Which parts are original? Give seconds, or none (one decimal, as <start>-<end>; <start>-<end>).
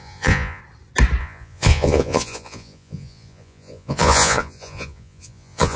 0.6-1.2